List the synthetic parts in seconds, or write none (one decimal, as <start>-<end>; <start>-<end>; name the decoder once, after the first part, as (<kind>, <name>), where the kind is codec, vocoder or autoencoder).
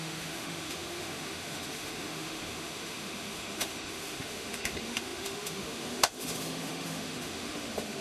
0.0-8.0 (autoencoder, DAC-VAE)